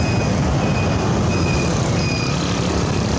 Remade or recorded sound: recorded